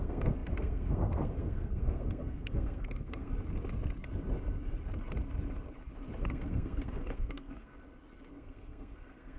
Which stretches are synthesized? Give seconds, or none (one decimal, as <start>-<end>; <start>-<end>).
0.0-3.3; 6.2-7.7; 8.3-9.4